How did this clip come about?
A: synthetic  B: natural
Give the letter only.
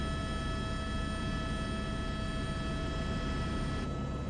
B